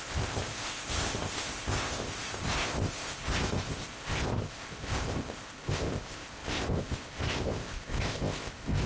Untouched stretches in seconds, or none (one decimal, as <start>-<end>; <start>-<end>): none